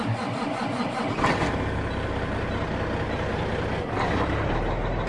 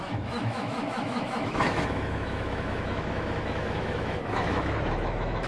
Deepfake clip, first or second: second